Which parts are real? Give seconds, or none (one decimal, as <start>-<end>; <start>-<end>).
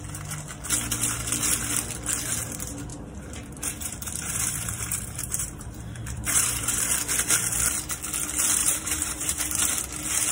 0.0-2.9; 6.8-8.6; 9.4-10.3